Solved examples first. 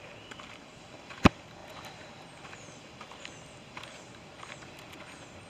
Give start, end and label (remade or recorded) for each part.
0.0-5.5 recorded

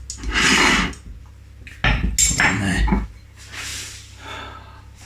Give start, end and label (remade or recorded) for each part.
0.0-5.1 recorded

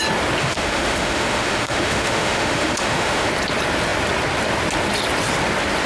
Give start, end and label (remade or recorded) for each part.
0.0-0.4 recorded; 0.4-3.3 remade; 3.3-5.9 recorded